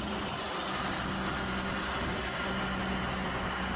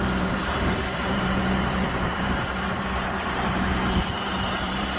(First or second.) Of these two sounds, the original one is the first